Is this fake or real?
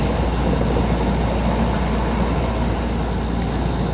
real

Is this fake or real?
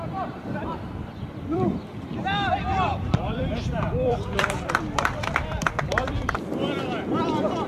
fake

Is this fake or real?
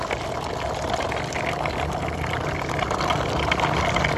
real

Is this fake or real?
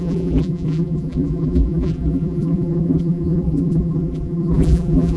fake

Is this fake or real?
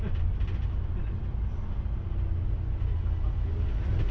real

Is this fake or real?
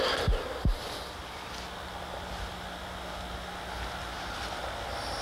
real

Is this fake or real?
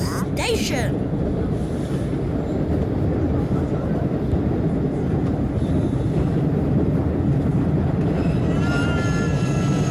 real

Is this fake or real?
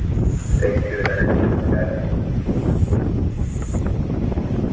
fake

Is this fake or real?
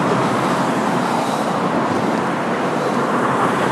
fake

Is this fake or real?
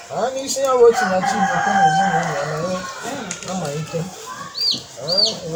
real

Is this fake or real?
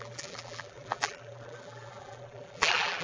fake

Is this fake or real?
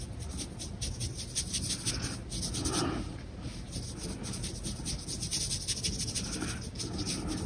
real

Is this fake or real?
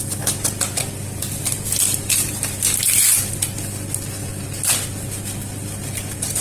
real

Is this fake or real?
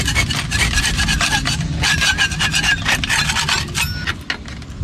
real